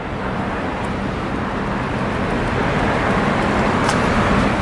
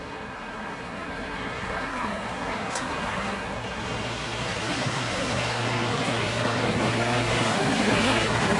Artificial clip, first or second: second